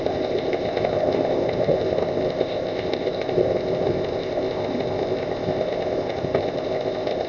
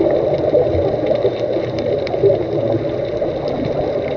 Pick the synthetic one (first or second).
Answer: first